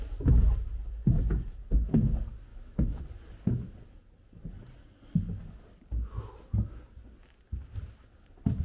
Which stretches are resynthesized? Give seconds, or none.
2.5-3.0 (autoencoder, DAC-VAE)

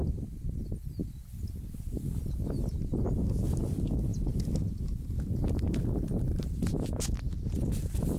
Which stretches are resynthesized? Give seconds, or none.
none

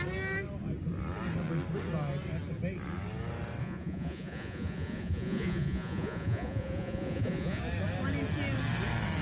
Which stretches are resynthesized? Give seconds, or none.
3.6-7.6 (vocoder, Vocos)

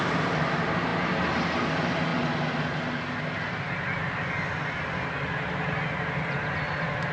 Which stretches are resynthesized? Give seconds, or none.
none

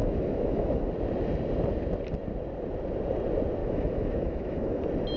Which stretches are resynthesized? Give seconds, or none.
0.0-0.9 (autoencoder, DAC-VAE); 3.6-4.8

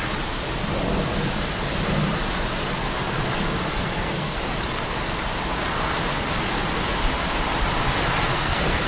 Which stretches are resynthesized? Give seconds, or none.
3.7-4.4 (codec, SNAC); 8.3-8.9

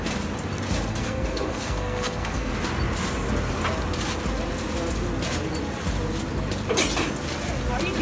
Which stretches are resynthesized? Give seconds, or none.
0.9-2.5 (codec, SNAC)

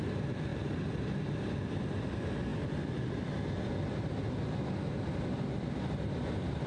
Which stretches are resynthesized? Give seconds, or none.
none